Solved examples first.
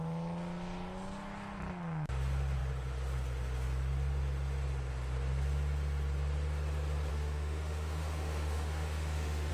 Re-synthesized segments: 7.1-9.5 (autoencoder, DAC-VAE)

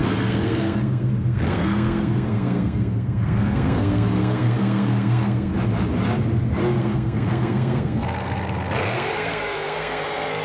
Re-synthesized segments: 0.0-5.5 (codec, SNAC); 6.8-10.4

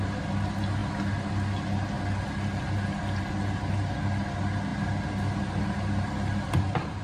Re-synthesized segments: none